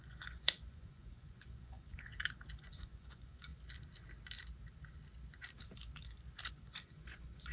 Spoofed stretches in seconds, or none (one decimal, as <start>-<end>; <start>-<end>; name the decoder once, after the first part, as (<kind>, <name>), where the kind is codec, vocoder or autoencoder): 0.0-2.1 (vocoder, Vocos); 2.6-3.5; 6.5-7.5